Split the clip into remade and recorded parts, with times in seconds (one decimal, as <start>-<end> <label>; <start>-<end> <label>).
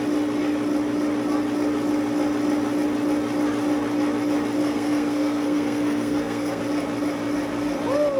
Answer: 0.0-4.6 recorded; 4.6-6.6 remade; 6.6-8.2 recorded